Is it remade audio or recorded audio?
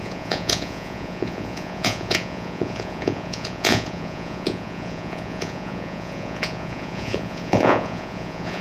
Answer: remade